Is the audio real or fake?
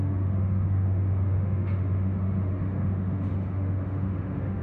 fake